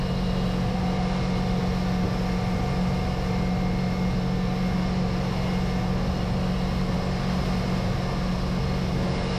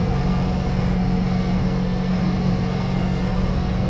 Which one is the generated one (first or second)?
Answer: second